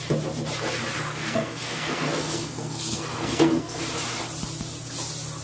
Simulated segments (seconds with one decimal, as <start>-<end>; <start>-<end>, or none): 1.1-3.8